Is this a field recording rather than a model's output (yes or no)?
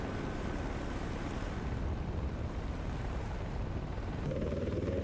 no